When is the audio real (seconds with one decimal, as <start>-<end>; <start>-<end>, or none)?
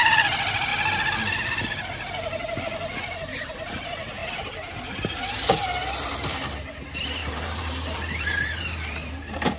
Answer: 0.0-4.2; 4.8-7.2; 9.1-9.6